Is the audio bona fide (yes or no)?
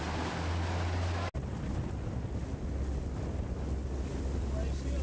yes